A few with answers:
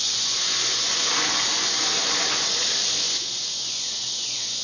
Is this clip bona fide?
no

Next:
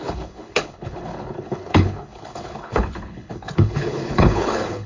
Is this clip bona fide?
no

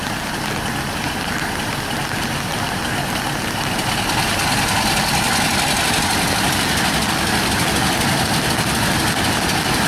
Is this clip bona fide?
yes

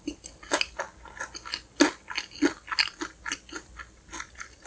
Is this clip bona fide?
yes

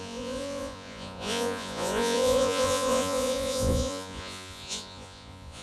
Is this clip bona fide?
no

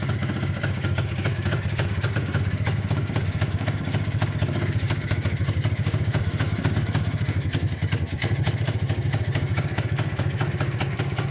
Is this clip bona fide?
no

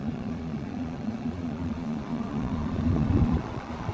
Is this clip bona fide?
no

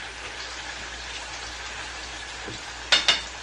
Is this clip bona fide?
yes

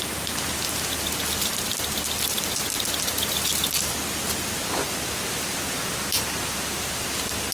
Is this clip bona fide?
yes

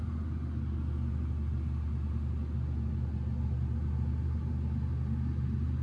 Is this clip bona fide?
yes